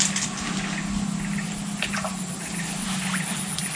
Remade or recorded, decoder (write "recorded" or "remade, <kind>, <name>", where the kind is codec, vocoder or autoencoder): recorded